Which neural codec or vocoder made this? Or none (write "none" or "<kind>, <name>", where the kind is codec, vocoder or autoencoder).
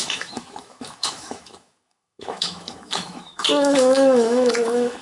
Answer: autoencoder, DAC-VAE